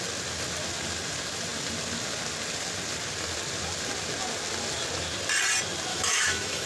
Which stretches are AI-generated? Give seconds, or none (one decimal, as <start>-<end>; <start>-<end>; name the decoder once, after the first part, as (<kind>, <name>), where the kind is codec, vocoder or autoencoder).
5.9-6.7 (autoencoder, DAC-VAE)